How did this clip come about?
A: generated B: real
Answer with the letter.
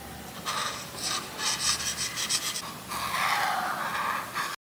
B